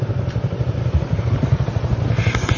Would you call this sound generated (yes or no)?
no